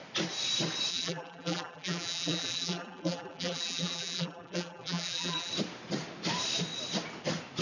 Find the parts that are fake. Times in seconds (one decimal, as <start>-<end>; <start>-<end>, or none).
0.9-5.5